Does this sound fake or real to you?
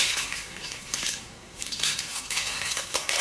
fake